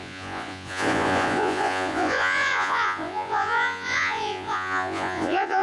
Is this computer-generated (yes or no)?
yes